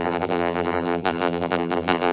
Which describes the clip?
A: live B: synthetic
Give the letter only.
B